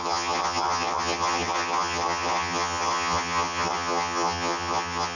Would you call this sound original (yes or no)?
no